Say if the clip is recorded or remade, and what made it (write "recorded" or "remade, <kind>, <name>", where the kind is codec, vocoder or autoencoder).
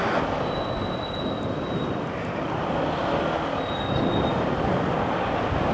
recorded